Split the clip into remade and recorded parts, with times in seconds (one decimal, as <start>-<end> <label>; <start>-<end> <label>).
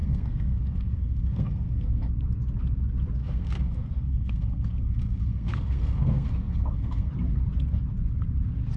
0.0-2.1 remade; 2.1-3.2 recorded; 3.2-7.1 remade; 7.1-8.8 recorded